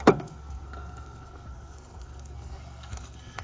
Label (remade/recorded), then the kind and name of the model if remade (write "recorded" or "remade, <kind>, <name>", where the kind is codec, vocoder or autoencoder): remade, codec, SNAC